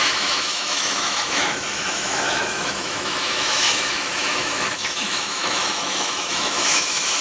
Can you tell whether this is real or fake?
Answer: fake